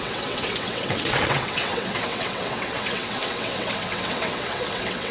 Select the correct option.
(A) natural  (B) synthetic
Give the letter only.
B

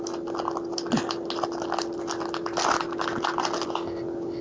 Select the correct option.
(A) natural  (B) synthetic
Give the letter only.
A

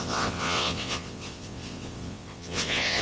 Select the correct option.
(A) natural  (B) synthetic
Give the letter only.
B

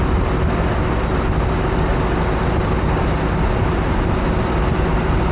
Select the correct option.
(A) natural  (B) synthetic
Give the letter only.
A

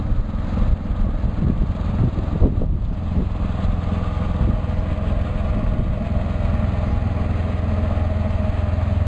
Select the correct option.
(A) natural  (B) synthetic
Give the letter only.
A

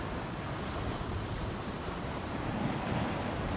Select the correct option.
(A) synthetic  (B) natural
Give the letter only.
B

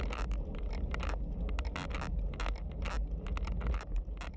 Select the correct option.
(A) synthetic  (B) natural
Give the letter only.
B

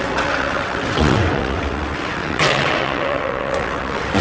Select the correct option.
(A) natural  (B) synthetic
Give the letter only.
B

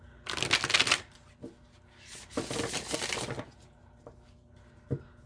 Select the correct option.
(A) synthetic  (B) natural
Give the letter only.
B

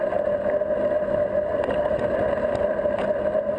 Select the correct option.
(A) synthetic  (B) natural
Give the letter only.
B